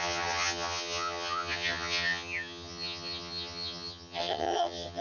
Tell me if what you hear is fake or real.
fake